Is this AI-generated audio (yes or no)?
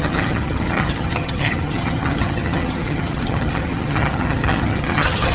yes